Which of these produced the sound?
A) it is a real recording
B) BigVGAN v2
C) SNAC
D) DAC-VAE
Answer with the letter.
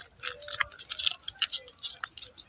A